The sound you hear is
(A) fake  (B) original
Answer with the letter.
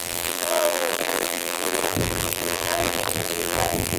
A